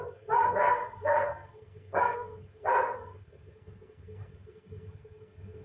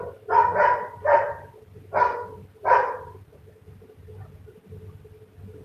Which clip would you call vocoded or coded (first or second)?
first